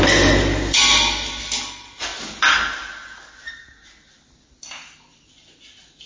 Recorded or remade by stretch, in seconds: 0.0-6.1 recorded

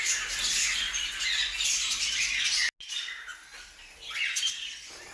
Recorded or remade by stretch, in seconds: 0.0-5.1 recorded

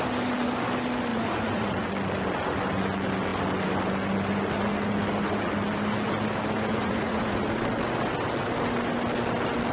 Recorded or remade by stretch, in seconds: 0.0-1.1 recorded; 1.1-1.9 remade; 1.9-6.8 recorded; 6.8-7.6 remade; 7.6-9.7 recorded

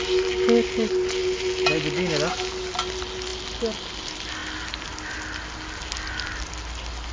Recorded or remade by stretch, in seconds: 0.0-7.1 recorded

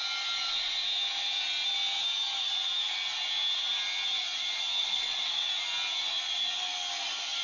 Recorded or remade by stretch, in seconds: 0.0-4.8 recorded; 4.8-5.5 remade; 5.5-7.4 recorded